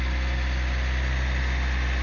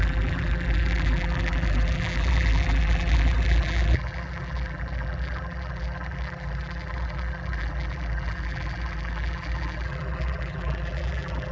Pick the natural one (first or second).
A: first